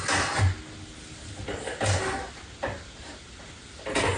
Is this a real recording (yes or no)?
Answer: yes